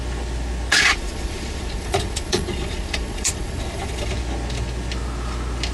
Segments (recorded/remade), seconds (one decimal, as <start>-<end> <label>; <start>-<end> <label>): 0.0-0.7 recorded; 0.7-4.1 remade; 4.1-5.7 recorded